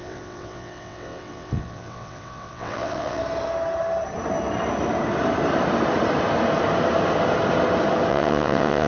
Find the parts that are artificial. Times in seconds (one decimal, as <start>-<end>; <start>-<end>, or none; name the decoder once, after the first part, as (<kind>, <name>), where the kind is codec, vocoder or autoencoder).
0.0-3.2 (vocoder, WaveNeXt); 8.1-8.9